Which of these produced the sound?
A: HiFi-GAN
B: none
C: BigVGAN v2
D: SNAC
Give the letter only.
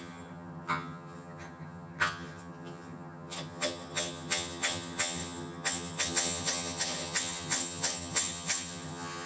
A